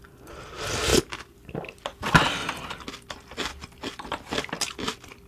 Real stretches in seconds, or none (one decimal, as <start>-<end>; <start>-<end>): 0.0-5.3